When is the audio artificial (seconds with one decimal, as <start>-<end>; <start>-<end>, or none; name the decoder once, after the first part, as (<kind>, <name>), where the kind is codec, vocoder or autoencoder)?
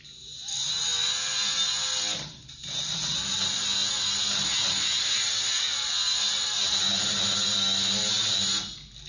none